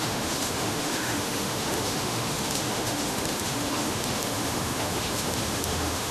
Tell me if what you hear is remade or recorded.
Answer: remade